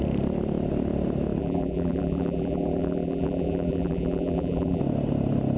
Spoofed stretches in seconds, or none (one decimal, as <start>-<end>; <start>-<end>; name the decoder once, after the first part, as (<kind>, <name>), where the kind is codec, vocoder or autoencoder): 1.4-4.8 (vocoder, BigVGAN v2)